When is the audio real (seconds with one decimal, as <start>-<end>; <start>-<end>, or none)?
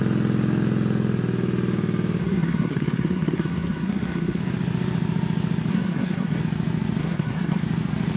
0.0-2.2; 4.4-5.7; 6.4-7.0; 7.6-8.2